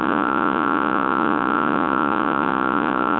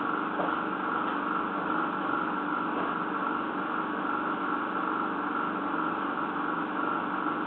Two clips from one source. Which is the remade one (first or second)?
first